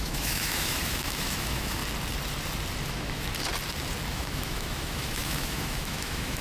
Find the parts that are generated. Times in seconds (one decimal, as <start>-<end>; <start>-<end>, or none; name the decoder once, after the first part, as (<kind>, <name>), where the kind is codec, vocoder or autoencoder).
0.0-1.8 (autoencoder, DAC-VAE); 2.9-3.3; 4.1-6.4